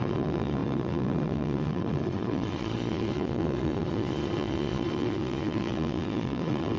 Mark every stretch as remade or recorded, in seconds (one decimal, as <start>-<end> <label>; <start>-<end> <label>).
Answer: 0.0-6.8 remade